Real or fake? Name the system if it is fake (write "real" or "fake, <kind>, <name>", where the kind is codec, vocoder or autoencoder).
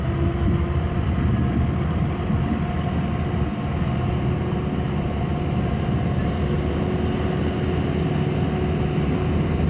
real